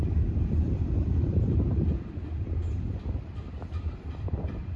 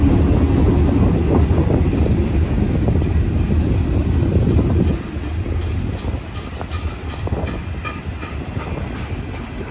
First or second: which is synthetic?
first